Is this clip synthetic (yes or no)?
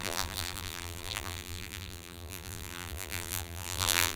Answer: yes